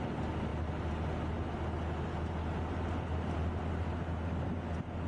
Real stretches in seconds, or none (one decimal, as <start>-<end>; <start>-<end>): 0.0-5.1